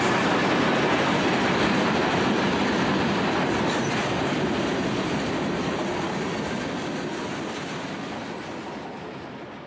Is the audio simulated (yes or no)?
no